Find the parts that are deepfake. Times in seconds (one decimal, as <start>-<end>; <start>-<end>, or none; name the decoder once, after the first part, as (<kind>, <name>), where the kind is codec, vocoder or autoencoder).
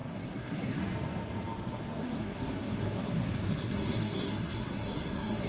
0.0-0.8 (codec, SNAC); 2.0-5.5